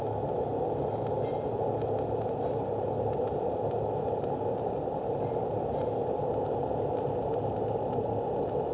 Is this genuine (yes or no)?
yes